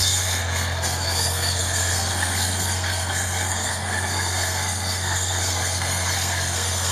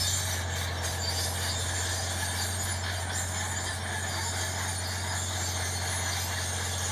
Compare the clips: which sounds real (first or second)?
second